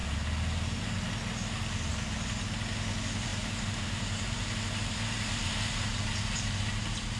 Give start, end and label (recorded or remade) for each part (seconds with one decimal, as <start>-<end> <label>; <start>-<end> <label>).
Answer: 0.0-3.3 recorded; 3.3-6.6 remade; 6.6-7.2 recorded